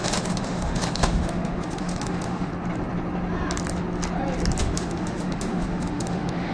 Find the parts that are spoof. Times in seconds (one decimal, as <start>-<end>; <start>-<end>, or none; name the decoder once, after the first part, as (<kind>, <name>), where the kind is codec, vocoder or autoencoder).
0.0-2.5 (autoencoder, DAC-VAE); 4.6-6.5